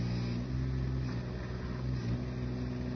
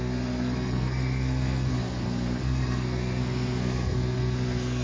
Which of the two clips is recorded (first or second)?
first